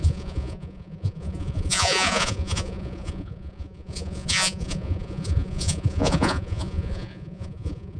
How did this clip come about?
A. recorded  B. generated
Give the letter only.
B